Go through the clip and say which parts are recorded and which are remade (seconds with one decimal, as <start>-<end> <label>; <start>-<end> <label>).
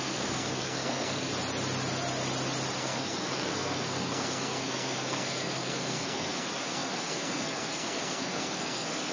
0.0-1.3 remade; 1.3-2.8 recorded; 2.8-9.1 remade